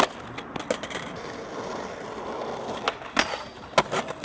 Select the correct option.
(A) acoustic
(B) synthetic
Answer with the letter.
A